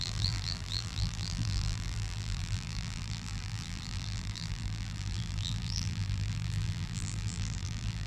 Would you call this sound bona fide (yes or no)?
no